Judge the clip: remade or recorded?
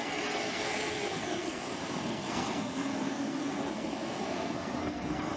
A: remade